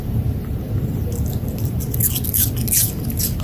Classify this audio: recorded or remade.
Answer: recorded